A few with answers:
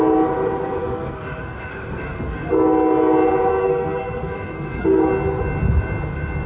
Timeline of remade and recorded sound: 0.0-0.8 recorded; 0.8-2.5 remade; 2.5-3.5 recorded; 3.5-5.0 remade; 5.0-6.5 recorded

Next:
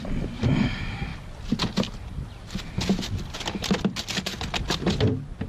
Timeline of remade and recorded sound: 0.0-5.5 recorded

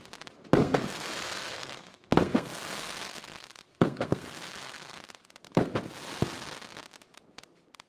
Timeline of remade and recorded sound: 0.0-0.6 recorded; 0.6-5.3 remade; 5.3-7.9 recorded

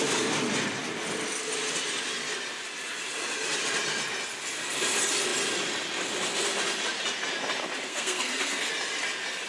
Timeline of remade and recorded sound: 0.0-7.9 recorded; 7.9-8.7 remade; 8.7-9.5 recorded

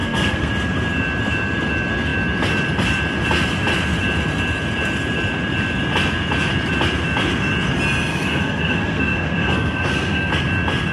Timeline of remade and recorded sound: 0.0-0.5 remade; 0.5-8.1 recorded; 8.1-10.3 remade; 10.3-10.9 recorded